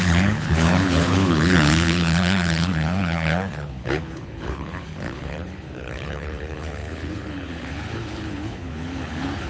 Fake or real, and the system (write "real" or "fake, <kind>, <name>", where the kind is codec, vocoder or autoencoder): fake, codec, HILCodec